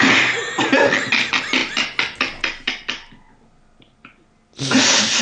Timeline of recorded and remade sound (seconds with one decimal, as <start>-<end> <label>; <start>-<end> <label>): 0.0-5.2 recorded